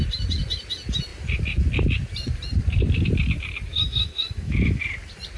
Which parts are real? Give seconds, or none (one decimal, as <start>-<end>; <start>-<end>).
0.0-3.7; 4.8-5.4